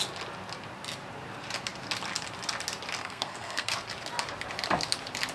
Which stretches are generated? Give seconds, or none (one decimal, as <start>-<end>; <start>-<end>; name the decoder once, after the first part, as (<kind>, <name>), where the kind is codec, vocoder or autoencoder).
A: 3.0-3.7 (codec, SNAC)